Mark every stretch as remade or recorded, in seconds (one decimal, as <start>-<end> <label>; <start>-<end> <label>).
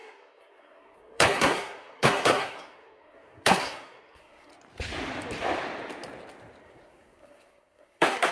0.0-4.5 remade; 4.5-6.6 recorded; 6.6-8.3 remade